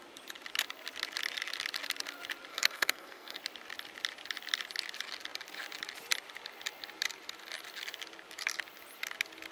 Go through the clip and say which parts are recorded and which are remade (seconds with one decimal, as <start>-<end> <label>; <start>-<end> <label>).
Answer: 0.0-2.5 recorded; 2.5-3.4 remade; 3.4-9.5 recorded